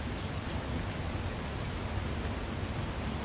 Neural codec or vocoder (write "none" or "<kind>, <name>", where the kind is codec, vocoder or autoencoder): none